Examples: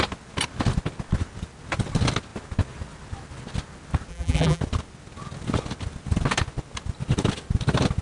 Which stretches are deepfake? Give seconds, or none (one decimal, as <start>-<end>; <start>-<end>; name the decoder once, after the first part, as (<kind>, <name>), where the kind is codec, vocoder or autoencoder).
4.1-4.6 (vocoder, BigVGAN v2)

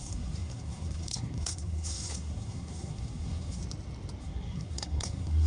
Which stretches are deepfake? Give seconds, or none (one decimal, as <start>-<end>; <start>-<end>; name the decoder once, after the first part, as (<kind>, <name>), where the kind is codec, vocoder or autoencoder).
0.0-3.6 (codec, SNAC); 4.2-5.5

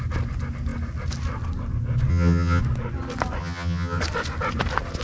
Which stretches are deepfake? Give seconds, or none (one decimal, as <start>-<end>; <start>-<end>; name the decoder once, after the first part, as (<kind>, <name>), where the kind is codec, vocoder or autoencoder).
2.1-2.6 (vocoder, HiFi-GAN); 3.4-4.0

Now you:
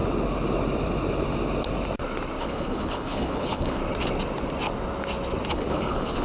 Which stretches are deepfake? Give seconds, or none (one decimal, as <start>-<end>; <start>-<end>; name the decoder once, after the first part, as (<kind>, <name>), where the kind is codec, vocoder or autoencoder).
2.4-3.8 (codec, HILCodec); 5.5-6.2

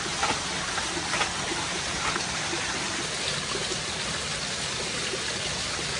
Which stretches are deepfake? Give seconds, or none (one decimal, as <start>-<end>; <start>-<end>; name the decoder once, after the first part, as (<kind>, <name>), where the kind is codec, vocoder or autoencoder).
none